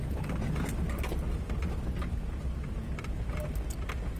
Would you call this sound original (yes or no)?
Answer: yes